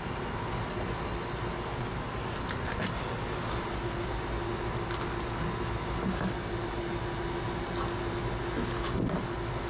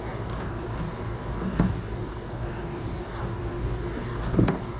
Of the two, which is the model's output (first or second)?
second